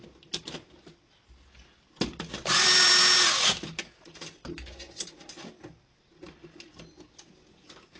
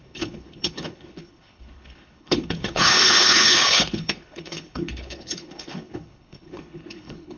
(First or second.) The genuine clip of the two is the first